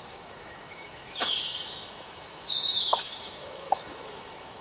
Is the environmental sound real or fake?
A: fake